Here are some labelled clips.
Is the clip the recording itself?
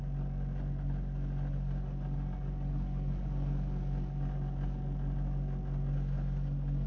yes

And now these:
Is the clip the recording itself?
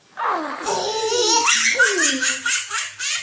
yes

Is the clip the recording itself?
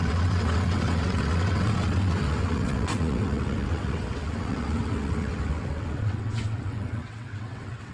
no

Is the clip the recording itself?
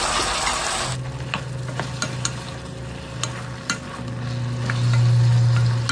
yes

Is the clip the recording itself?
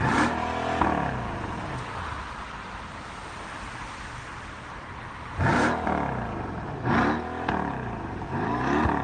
yes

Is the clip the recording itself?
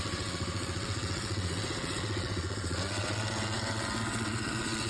no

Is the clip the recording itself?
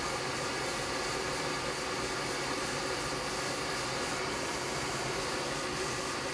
yes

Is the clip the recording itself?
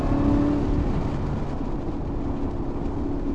yes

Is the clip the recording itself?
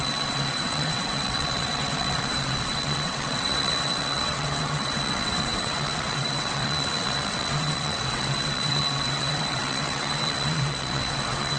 no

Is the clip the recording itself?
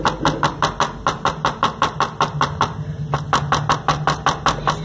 yes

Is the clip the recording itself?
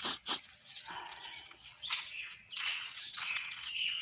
no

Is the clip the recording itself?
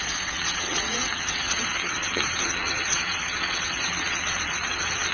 no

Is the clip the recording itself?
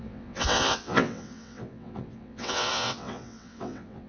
no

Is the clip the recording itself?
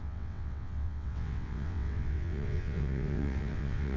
no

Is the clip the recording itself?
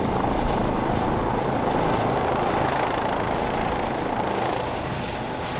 yes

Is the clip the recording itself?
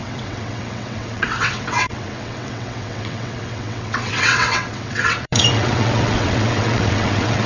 no